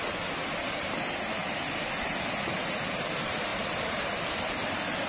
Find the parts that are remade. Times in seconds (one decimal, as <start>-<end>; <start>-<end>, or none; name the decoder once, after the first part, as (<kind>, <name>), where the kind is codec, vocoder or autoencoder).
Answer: 3.5-4.5 (vocoder, BigVGAN v2)

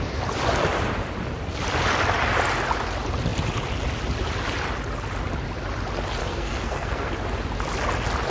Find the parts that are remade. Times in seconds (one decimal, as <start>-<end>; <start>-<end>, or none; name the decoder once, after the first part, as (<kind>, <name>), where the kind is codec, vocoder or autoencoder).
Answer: 6.2-7.1 (codec, SNAC)

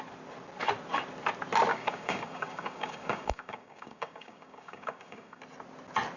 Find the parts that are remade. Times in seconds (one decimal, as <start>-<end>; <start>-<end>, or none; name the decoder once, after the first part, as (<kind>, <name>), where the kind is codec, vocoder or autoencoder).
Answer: 1.7-5.4 (codec, DAC)

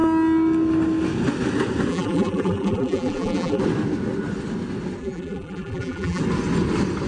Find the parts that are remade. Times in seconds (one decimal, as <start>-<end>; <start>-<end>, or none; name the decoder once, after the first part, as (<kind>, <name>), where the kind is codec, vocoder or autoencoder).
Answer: 1.9-3.6 (vocoder, BigVGAN v2); 5.0-6.2